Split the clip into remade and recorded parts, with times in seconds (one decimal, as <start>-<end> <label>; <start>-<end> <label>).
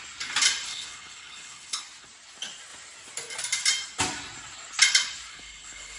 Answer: 0.0-0.7 recorded; 0.7-1.8 remade; 1.8-5.3 recorded; 5.3-6.0 remade